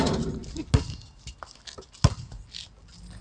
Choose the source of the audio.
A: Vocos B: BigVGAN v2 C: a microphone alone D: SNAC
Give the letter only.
C